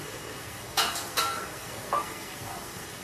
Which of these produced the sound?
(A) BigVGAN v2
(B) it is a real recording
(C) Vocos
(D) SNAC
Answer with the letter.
D